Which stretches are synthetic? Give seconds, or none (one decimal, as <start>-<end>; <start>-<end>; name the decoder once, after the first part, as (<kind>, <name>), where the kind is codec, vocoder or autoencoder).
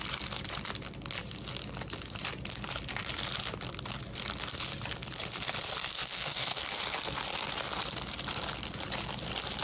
5.9-6.6 (codec, SNAC)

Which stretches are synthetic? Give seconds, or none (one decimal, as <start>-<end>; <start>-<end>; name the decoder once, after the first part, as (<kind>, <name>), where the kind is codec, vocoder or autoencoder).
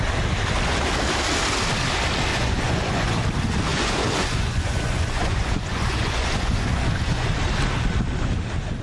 2.3-3.2 (vocoder, Vocos); 3.7-7.3